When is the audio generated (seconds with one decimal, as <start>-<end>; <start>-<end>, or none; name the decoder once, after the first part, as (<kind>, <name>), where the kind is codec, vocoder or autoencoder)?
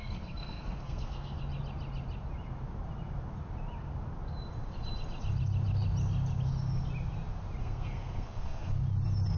0.0-1.4 (codec, SNAC); 7.6-8.7